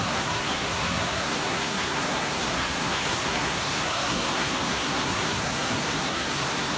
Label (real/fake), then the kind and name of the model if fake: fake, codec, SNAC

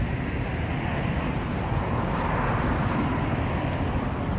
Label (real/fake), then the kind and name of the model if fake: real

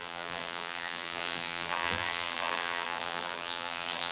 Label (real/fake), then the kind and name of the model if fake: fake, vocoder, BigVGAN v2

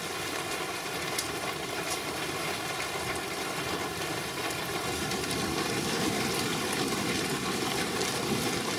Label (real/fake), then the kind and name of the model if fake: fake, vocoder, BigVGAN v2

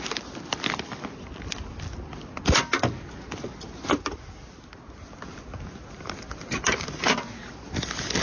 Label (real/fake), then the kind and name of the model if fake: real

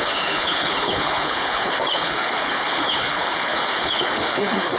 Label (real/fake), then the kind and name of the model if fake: fake, codec, HILCodec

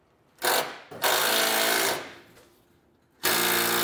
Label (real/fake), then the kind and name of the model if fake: real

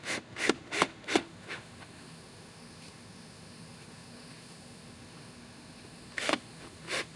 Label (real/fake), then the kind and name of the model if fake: fake, autoencoder, DAC-VAE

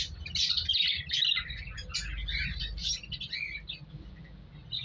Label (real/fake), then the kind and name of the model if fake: fake, vocoder, BigVGAN v2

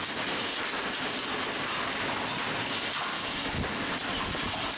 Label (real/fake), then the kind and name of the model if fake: real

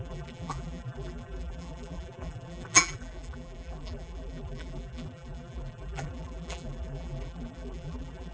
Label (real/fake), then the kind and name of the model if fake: fake, vocoder, BigVGAN v2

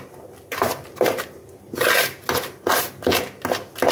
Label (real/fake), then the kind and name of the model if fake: real